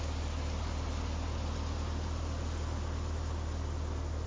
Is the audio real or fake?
real